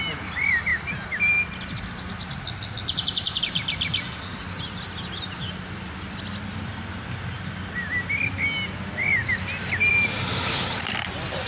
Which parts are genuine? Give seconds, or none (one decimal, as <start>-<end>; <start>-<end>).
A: 0.0-11.5